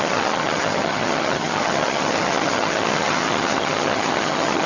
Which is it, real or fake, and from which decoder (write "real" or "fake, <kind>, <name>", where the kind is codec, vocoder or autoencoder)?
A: fake, vocoder, HiFi-GAN